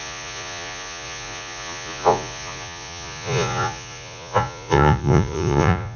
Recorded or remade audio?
remade